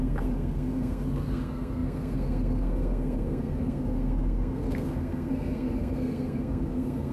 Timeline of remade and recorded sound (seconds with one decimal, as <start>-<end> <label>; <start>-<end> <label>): 0.0-7.1 remade